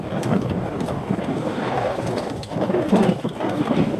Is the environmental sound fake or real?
fake